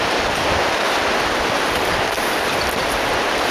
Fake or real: real